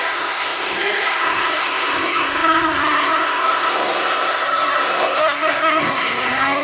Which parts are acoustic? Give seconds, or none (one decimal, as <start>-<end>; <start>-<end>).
none